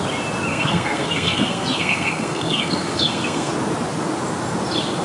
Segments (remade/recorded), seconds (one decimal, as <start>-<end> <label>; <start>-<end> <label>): 0.0-0.5 recorded; 0.5-3.5 remade; 3.5-5.0 recorded